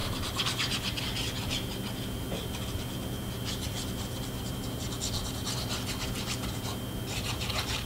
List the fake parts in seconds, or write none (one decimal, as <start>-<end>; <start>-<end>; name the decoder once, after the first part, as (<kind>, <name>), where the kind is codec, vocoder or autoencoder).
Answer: none